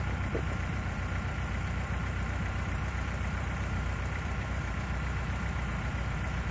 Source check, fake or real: fake